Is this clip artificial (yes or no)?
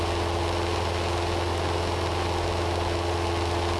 no